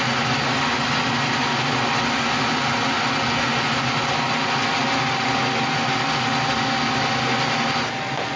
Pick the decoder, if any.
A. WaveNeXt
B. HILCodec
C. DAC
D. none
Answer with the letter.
D